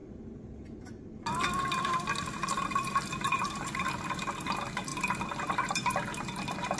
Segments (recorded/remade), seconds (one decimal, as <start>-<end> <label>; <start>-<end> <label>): 0.0-6.8 recorded